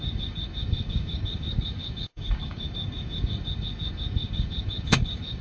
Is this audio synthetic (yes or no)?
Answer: yes